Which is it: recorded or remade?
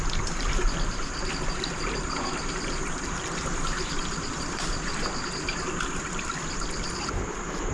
recorded